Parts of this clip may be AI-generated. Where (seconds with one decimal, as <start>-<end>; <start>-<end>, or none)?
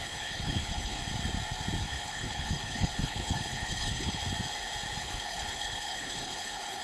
0.0-1.0; 1.8-4.2; 5.0-6.8